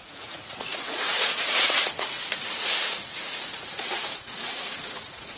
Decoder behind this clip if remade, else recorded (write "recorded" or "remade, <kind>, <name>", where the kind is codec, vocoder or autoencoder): remade, vocoder, Vocos